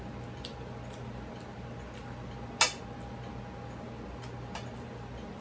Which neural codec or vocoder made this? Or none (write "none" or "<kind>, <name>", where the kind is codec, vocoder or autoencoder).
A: none